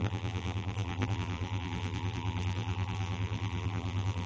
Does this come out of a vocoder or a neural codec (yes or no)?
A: yes